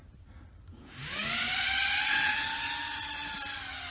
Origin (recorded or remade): recorded